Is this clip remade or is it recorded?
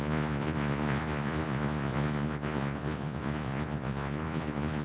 remade